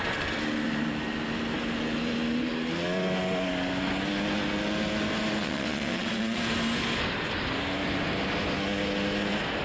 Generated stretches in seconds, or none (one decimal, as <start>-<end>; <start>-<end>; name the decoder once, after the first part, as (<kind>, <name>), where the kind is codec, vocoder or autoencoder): 5.4-6.4 (vocoder, Vocos)